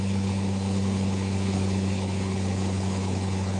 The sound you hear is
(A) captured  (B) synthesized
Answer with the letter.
B